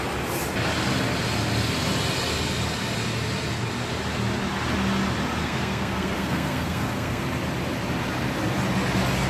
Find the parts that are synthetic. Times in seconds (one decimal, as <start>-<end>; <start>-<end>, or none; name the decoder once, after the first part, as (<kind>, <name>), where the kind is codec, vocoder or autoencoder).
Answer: 5.4-7.2 (codec, SNAC)